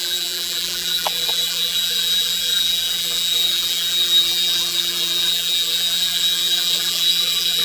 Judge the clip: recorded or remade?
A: remade